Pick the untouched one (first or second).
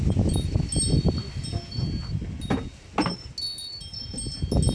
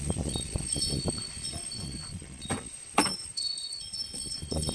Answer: first